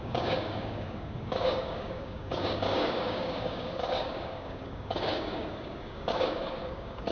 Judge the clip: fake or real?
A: fake